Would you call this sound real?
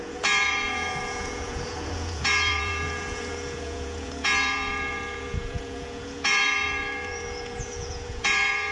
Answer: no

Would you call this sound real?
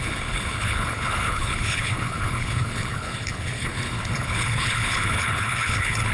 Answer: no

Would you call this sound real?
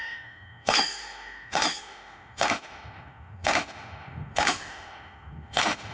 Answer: no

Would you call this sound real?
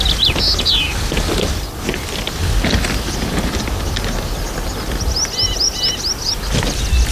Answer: yes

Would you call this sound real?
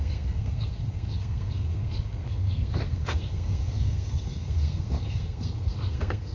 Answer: no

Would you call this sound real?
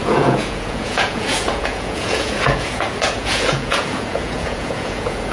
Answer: no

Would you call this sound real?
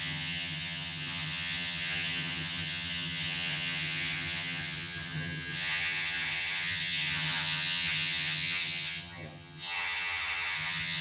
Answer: no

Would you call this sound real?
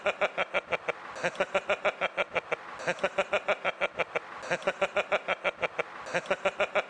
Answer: yes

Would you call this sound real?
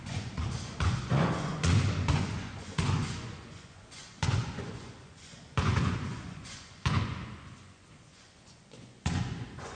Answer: no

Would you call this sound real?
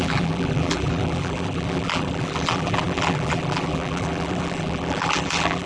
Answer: no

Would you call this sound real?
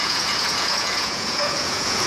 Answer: no